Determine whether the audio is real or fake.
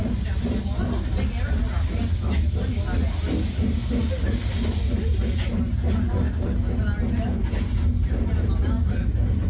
real